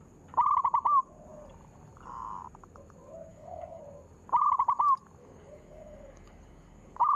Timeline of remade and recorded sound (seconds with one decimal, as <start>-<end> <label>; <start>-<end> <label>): 0.0-3.3 recorded; 3.3-3.8 remade; 3.8-5.2 recorded; 5.2-7.2 remade